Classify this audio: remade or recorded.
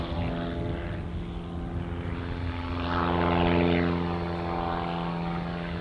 recorded